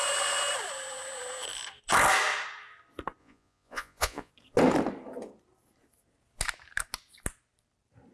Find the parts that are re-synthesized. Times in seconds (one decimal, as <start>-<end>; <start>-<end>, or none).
3.2-4.3